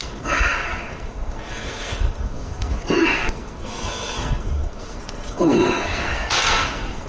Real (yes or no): no